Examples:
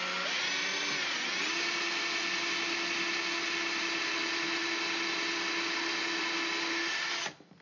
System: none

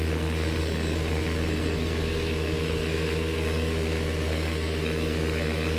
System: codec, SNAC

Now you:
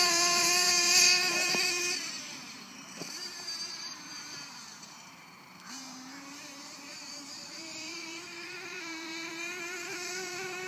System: vocoder, BigVGAN v2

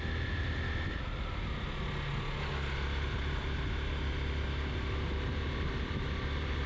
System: none